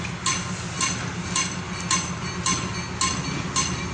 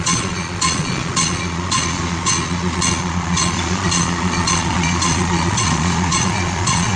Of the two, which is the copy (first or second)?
second